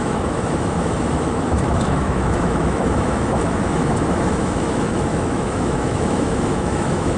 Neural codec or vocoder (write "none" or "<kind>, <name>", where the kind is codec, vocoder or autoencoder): autoencoder, DAC-VAE